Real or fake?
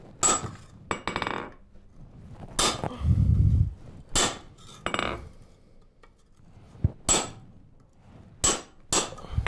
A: real